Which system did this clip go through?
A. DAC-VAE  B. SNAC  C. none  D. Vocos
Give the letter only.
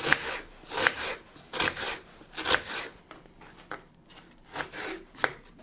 C